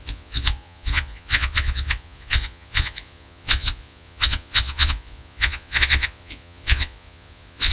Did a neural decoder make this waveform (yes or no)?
yes